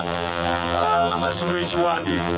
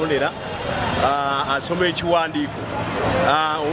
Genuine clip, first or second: second